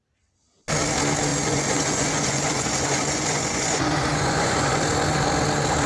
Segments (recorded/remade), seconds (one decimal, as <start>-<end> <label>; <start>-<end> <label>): 0.0-1.3 recorded; 1.3-4.8 remade; 4.8-5.9 recorded